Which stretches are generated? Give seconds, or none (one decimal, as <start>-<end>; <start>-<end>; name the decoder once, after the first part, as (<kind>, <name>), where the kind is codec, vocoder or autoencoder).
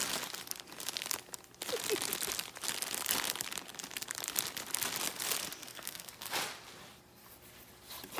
5.7-6.3 (codec, SNAC)